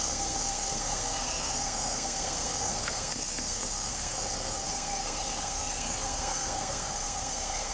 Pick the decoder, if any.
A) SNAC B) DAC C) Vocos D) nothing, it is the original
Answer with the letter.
A